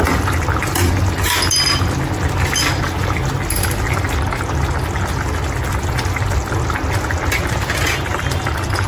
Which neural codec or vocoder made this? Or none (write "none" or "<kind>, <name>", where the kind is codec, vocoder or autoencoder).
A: none